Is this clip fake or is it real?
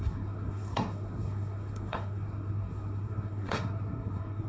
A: fake